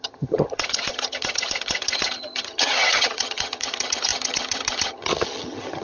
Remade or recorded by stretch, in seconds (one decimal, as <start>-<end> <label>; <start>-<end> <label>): 0.0-5.8 remade